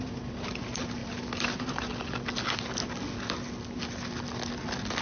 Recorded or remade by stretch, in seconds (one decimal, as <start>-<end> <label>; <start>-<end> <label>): 0.0-5.0 recorded